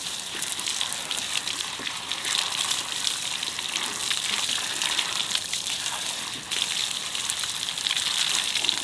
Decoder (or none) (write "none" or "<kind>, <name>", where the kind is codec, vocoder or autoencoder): none